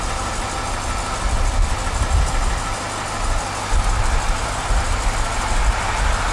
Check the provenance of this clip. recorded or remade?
recorded